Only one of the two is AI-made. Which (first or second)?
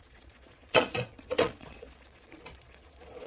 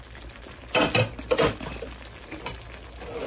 first